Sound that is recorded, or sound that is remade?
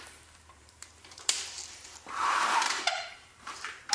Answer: remade